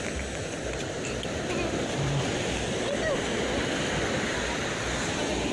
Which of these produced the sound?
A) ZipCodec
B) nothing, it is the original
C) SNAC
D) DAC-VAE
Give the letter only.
B